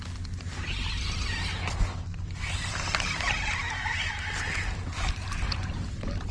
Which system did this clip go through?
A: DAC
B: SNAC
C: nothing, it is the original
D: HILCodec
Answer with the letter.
C